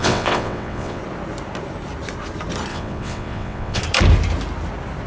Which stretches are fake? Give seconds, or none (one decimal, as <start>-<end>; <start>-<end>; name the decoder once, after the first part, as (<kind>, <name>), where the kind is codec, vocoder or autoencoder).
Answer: 0.0-1.0 (vocoder, WaveNeXt); 2.7-3.8